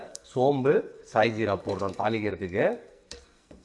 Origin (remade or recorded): remade